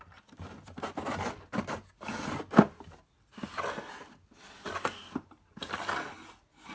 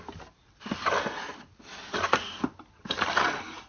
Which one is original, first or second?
first